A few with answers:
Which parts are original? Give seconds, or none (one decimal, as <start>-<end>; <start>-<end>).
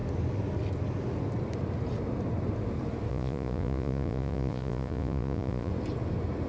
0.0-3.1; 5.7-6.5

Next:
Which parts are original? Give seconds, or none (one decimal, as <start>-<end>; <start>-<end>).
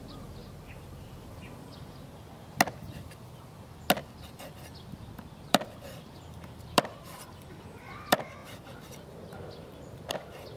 0.0-0.4; 1.4-4.0; 7.3-8.4; 10.1-10.6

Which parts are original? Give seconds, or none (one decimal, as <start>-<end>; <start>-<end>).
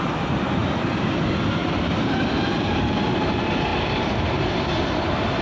0.0-5.4